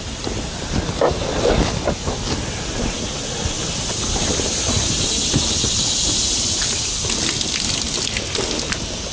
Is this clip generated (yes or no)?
no